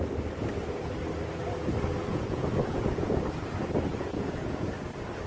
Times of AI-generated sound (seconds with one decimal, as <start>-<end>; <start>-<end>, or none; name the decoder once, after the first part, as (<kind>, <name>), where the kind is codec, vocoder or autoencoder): 2.1-3.1 (vocoder, Vocos); 3.9-4.7